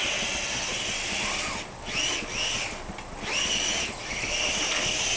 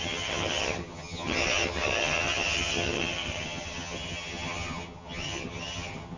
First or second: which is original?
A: first